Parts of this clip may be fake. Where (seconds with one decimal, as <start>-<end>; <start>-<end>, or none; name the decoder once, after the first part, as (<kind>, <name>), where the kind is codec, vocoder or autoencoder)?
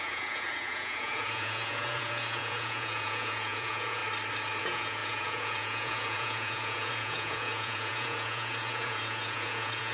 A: 0.0-4.0 (vocoder, Vocos); 4.6-9.9